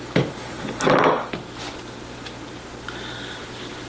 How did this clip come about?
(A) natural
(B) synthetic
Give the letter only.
A